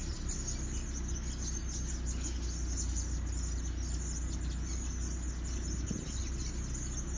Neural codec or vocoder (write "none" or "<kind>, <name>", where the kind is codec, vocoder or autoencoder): none